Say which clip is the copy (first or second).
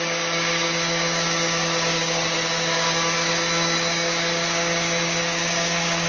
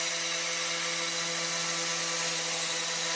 first